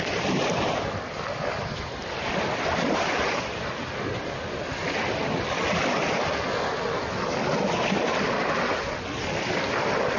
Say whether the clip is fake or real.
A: real